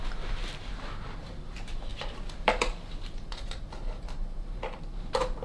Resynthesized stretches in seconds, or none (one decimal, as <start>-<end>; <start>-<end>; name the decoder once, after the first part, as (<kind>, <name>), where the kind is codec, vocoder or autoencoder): 0.7-5.4 (vocoder, BigVGAN v2)